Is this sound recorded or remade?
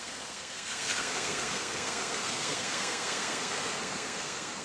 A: remade